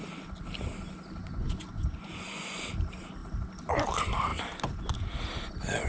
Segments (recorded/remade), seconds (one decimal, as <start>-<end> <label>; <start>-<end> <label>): 0.0-1.2 recorded; 1.2-2.6 remade; 2.6-5.9 recorded